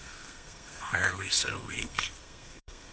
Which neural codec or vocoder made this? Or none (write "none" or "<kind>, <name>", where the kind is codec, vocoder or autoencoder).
codec, SNAC